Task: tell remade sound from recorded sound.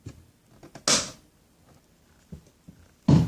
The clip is recorded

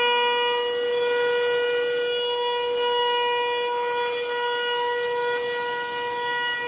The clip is recorded